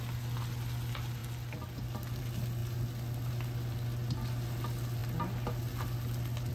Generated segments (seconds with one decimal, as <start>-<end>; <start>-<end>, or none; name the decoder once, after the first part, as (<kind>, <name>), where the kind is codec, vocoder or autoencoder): none